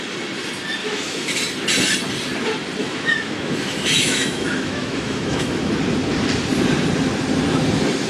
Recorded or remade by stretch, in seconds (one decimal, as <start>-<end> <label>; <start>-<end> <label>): 0.0-0.8 recorded; 0.8-1.4 remade; 1.4-2.8 recorded; 2.8-5.7 remade; 5.7-8.1 recorded

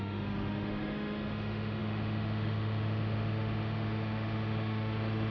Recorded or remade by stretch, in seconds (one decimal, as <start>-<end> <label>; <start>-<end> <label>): 0.0-5.3 remade

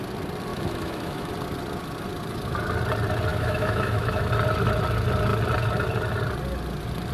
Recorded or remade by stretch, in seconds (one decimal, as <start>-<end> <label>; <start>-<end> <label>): 0.0-0.5 recorded; 0.5-1.3 remade; 1.3-3.3 recorded; 3.3-4.3 remade; 4.3-7.1 recorded

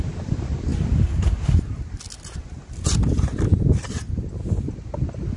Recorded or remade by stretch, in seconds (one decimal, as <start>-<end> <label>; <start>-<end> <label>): 0.0-5.4 recorded

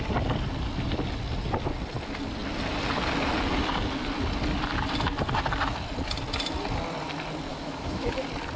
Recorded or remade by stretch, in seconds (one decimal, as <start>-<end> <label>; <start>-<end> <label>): 0.0-7.5 recorded; 7.5-8.1 remade; 8.1-8.6 recorded

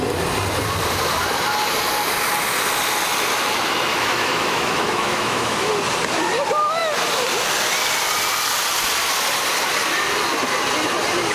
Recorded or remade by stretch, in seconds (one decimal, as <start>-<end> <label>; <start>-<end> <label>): 0.0-3.9 recorded; 3.9-5.7 remade; 5.7-11.3 recorded